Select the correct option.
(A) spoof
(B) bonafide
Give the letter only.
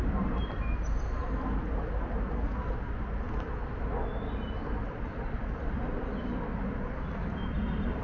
B